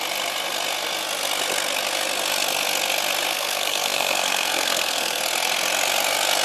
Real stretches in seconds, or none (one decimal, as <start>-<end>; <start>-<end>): 0.0-3.3; 5.2-6.4